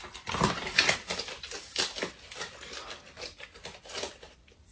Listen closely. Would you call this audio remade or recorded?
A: recorded